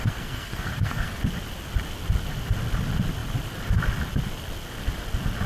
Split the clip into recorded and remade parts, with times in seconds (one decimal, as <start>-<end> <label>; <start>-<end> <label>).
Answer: 0.0-1.2 remade; 1.2-5.5 recorded